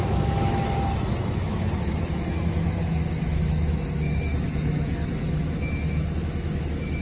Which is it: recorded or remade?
remade